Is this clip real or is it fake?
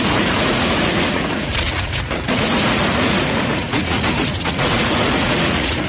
fake